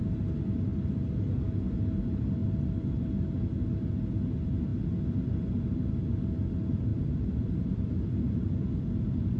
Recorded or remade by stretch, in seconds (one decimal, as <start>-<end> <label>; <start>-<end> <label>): 0.0-6.9 recorded; 6.9-9.4 remade

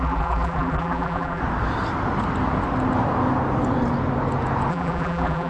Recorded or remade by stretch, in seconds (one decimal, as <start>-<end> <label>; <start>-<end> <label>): 0.0-1.4 remade; 1.4-4.7 recorded; 4.7-5.5 remade

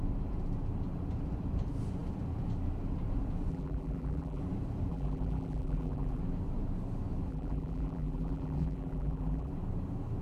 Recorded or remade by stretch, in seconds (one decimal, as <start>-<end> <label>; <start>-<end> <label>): 0.0-3.5 recorded; 3.5-4.4 remade; 4.4-4.9 recorded; 4.9-6.2 remade; 6.2-7.3 recorded; 7.3-9.5 remade; 9.5-10.2 recorded

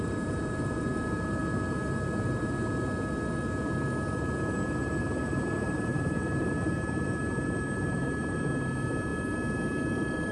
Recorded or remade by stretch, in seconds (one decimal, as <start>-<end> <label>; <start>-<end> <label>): 0.0-1.4 remade; 1.4-5.0 recorded; 5.0-9.1 remade; 9.1-10.3 recorded

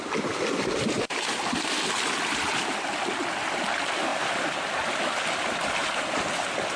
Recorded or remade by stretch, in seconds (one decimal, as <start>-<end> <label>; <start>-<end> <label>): 0.0-4.1 recorded; 4.1-4.7 remade; 4.7-6.8 recorded

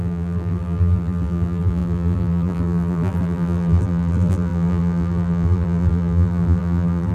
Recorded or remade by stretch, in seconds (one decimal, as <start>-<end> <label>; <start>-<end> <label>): 0.0-7.1 remade

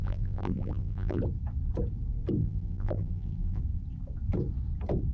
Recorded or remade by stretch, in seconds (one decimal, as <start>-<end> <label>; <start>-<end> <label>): 0.0-1.2 remade; 1.2-2.4 recorded; 2.4-3.6 remade; 3.6-5.1 recorded

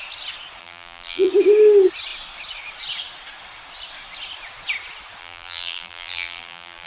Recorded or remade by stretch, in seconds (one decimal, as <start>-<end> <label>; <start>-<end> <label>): 0.0-0.6 recorded; 0.6-1.3 remade; 1.3-5.2 recorded; 5.2-6.9 remade